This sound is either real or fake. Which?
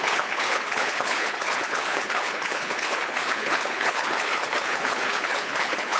fake